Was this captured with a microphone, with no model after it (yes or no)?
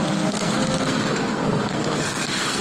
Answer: no